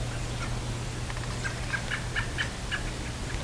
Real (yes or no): yes